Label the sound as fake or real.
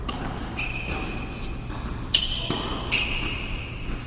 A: real